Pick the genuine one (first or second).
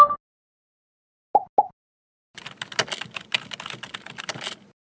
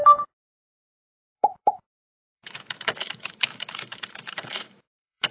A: first